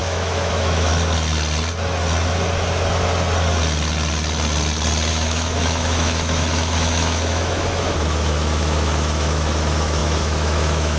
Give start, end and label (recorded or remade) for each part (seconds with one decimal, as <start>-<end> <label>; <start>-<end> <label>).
0.0-0.9 remade; 0.9-5.1 recorded; 5.1-11.0 remade

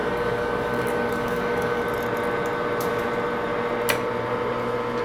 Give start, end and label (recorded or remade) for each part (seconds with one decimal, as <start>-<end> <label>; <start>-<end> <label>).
0.0-1.8 remade; 1.8-5.0 recorded

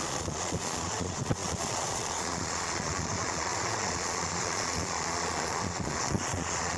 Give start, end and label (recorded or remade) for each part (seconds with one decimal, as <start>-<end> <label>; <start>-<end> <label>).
0.0-6.8 remade

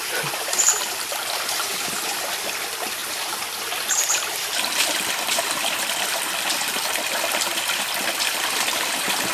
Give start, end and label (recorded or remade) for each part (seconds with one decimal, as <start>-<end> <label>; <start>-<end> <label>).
0.0-3.0 remade; 3.0-4.0 recorded; 4.0-9.3 remade

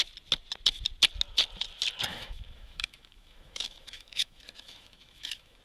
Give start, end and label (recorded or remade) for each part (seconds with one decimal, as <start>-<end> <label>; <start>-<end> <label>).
0.0-2.1 recorded; 2.1-5.6 remade

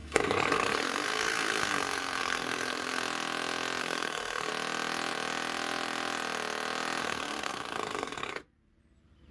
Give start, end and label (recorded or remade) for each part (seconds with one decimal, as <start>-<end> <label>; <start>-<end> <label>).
0.0-3.0 remade; 3.0-3.8 recorded; 3.8-4.5 remade; 4.5-7.0 recorded; 7.0-8.4 remade; 8.4-9.3 recorded